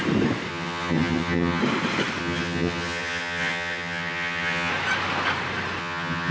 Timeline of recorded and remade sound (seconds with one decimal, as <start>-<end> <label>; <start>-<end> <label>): 0.0-0.5 recorded; 0.5-1.6 remade; 1.6-2.2 recorded; 2.2-4.7 remade; 4.7-5.8 recorded; 5.8-6.3 remade